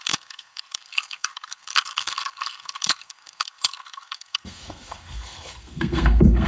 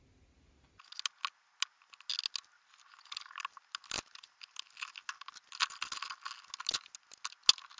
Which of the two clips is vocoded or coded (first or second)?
first